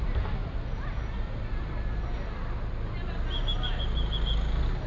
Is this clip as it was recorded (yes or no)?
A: yes